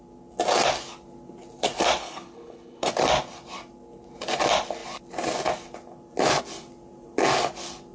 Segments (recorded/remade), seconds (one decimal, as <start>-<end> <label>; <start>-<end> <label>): 0.0-2.0 recorded; 2.0-2.9 remade; 2.9-7.9 recorded